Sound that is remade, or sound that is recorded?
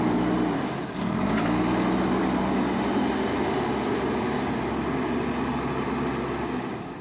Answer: recorded